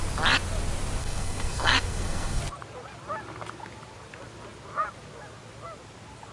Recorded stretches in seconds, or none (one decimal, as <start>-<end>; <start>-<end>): 0.0-1.0; 2.4-6.3